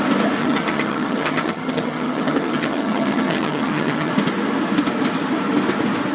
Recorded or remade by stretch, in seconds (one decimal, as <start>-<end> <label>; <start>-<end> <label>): 0.0-0.4 recorded; 0.4-4.1 remade; 4.1-6.1 recorded